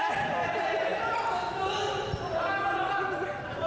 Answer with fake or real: real